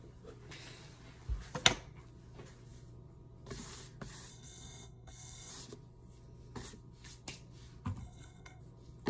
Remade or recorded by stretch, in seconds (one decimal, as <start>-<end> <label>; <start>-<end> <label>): 0.0-4.3 recorded; 4.3-5.5 remade; 5.5-8.0 recorded; 8.0-8.6 remade; 8.6-9.1 recorded